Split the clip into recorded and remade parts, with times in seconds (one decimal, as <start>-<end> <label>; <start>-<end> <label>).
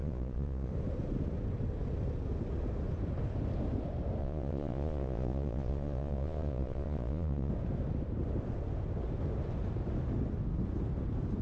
0.0-0.7 remade; 0.7-4.2 recorded; 4.2-7.5 remade; 7.5-11.4 recorded